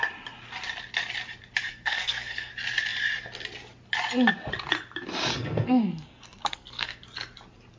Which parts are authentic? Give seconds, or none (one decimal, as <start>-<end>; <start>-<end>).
0.0-1.7; 2.5-5.3; 7.0-7.8